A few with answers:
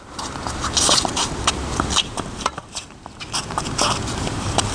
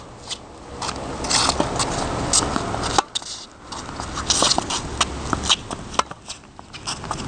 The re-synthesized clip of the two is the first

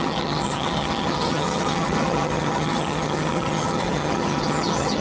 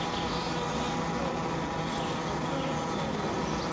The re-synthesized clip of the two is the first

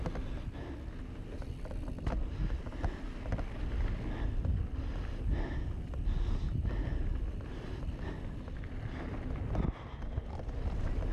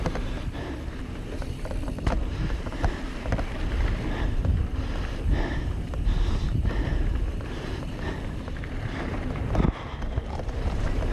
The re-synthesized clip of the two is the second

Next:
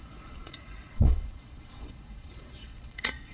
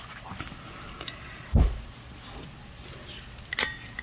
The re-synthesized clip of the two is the first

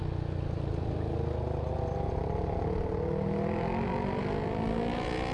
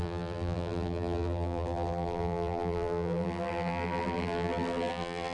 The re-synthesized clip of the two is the second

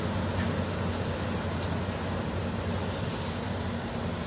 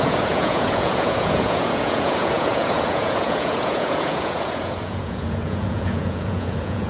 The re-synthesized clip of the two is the second